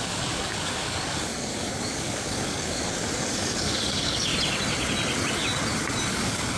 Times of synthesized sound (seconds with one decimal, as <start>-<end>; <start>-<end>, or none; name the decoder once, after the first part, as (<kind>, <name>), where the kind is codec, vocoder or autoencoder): 0.0-4.3 (codec, DAC); 6.1-6.6